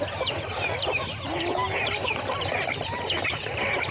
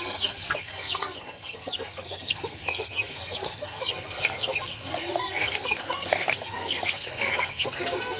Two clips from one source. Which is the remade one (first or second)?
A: second